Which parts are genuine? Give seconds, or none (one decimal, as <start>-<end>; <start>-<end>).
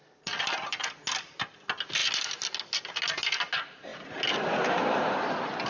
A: 0.0-5.7